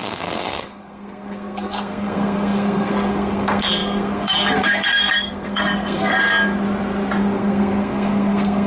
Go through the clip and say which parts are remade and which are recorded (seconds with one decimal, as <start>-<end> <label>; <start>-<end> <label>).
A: 0.0-6.1 remade; 6.1-7.2 recorded; 7.2-8.7 remade